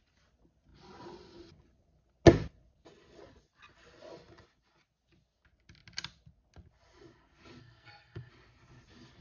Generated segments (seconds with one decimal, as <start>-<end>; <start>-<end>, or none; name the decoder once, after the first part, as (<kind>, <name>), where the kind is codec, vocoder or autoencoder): 7.6-8.3 (codec, SNAC)